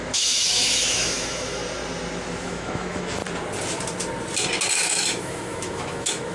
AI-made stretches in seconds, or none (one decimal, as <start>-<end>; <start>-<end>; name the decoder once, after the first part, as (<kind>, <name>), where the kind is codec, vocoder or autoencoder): 0.0-1.6 (autoencoder, DAC-VAE); 2.4-3.2; 4.7-6.3